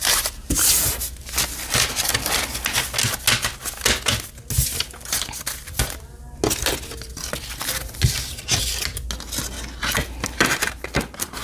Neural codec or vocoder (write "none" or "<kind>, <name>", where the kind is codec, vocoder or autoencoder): none